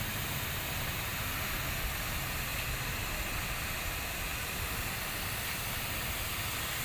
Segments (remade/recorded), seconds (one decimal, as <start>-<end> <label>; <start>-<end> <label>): 0.0-4.3 recorded; 4.3-4.9 remade; 4.9-6.8 recorded